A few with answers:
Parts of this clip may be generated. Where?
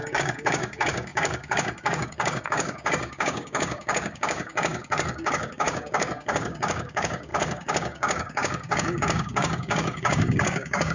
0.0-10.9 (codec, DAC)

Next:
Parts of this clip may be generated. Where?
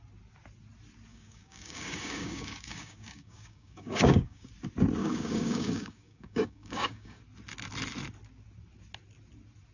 1.1-4.5 (codec, DAC); 5.0-7.2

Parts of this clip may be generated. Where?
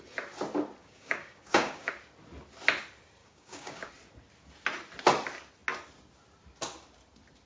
0.8-1.9 (codec, DAC); 3.2-3.9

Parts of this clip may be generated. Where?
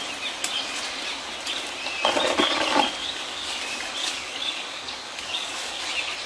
3.0-3.6 (codec, DAC); 4.0-5.8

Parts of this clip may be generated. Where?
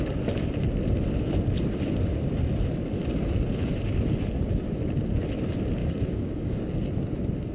5.8-6.7 (codec, DAC)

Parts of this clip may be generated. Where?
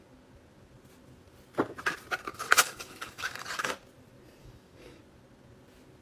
2.3-3.7 (codec, DAC); 4.4-5.0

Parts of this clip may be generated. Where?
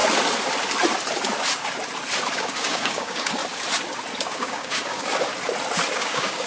2.3-3.4 (codec, DAC); 4.2-5.3; 5.9-6.5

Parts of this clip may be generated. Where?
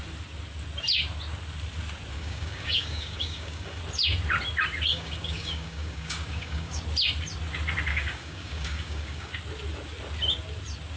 2.1-3.8 (codec, DAC); 4.9-6.8; 7.9-9.3